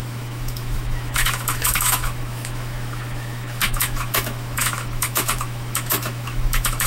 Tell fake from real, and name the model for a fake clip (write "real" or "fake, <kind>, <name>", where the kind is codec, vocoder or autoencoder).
fake, autoencoder, DAC-VAE